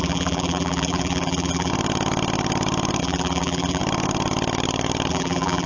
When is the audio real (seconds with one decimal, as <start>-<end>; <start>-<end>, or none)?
1.7-3.0; 3.8-5.1